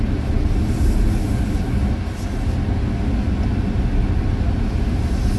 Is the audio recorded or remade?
recorded